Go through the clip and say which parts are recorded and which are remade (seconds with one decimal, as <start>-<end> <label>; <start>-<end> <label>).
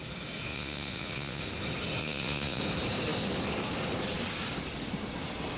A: 0.0-0.5 recorded; 0.5-1.4 remade; 1.4-2.0 recorded; 2.0-2.6 remade; 2.6-5.6 recorded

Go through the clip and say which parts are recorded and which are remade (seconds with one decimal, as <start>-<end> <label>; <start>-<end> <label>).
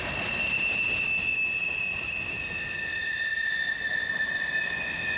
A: 0.0-5.2 recorded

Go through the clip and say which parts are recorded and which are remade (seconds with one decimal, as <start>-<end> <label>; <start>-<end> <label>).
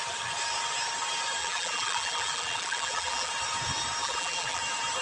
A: 0.0-1.4 recorded; 1.4-3.3 remade; 3.3-4.0 recorded; 4.0-4.6 remade; 4.6-5.0 recorded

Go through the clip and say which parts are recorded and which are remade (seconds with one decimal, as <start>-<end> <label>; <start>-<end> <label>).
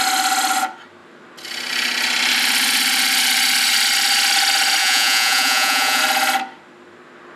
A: 0.0-4.8 recorded; 4.8-6.0 remade; 6.0-7.4 recorded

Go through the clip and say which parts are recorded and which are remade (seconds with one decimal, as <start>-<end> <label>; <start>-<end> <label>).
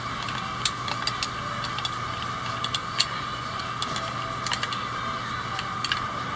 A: 0.0-2.8 recorded; 2.8-3.6 remade; 3.6-6.4 recorded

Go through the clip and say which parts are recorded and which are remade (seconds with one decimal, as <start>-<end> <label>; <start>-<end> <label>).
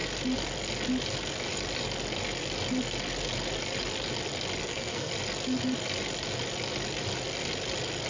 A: 0.0-4.6 recorded; 4.6-5.1 remade; 5.1-8.1 recorded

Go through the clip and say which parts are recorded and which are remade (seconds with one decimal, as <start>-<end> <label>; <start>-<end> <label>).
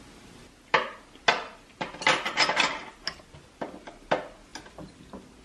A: 0.0-5.4 recorded